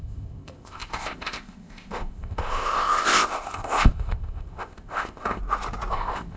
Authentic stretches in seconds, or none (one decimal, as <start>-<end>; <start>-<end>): 5.4-5.9